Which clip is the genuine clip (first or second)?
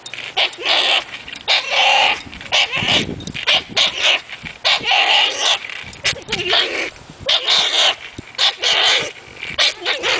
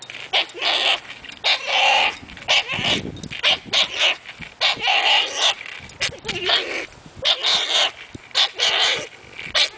second